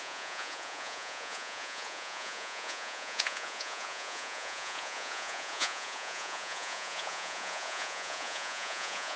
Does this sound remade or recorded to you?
remade